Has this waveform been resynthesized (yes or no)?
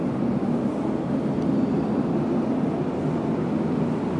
no